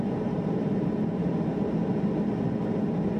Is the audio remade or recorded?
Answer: recorded